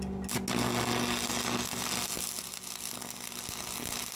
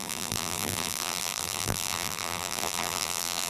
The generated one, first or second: second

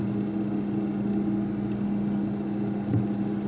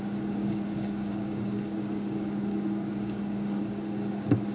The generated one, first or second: second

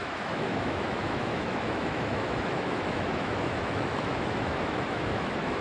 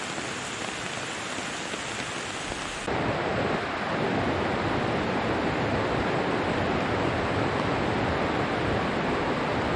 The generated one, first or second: first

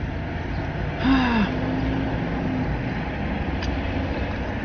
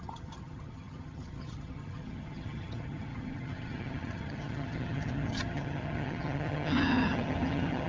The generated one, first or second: second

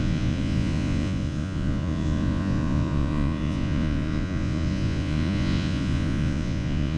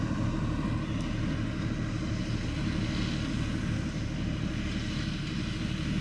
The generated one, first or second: first